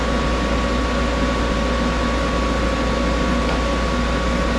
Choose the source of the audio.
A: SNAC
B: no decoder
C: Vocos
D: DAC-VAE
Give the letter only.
B